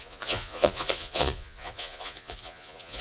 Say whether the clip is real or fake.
fake